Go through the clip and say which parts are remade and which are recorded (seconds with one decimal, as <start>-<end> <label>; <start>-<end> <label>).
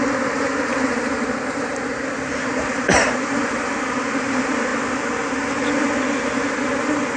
0.0-0.7 recorded; 0.7-3.9 remade; 3.9-7.2 recorded